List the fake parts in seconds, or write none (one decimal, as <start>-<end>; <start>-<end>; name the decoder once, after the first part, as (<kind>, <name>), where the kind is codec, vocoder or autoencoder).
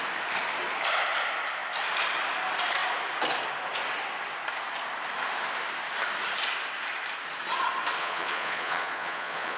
8.0-9.6 (vocoder, Vocos)